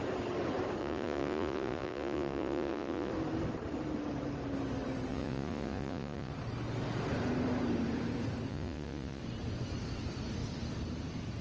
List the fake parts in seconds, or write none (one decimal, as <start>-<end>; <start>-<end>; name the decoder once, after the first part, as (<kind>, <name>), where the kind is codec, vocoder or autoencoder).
0.8-3.1 (vocoder, Vocos); 5.1-6.3; 8.5-9.2